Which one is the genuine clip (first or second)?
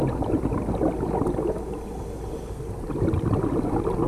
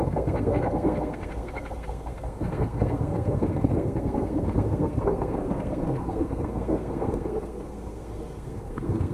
first